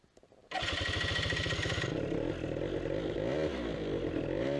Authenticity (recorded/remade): recorded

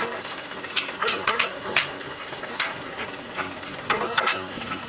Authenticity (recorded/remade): remade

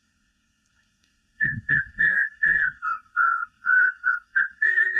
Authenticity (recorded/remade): remade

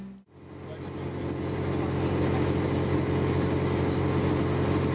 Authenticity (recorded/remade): recorded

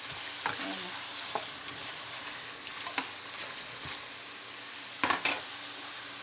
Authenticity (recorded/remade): recorded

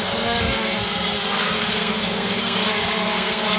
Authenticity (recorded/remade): remade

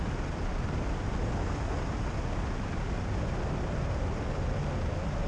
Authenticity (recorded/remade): recorded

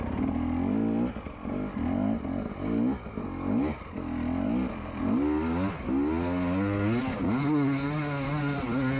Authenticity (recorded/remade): recorded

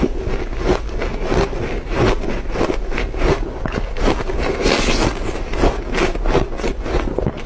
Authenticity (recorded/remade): recorded